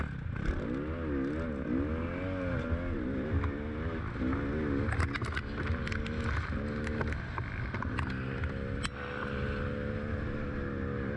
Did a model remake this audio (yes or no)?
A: no